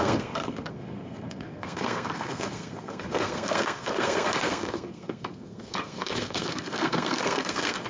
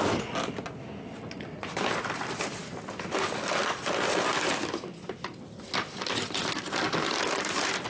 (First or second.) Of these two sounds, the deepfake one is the first